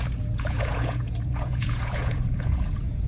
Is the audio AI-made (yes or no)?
yes